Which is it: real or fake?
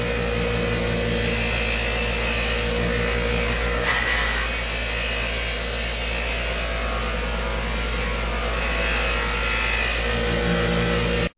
real